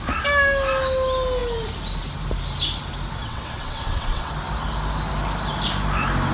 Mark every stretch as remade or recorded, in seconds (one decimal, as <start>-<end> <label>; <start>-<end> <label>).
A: 0.0-3.2 recorded; 3.2-4.3 remade; 4.3-6.3 recorded